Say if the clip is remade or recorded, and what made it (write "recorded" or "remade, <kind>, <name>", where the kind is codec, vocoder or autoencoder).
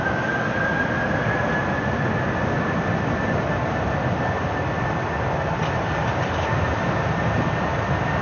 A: recorded